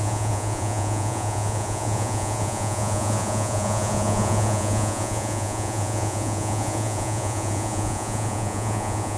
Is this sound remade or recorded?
remade